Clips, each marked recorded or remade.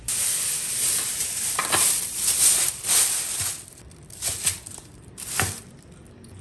remade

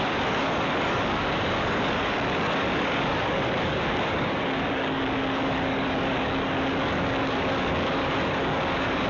remade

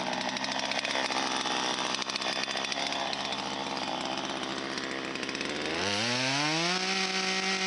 recorded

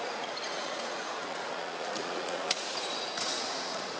remade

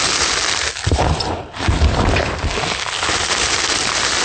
recorded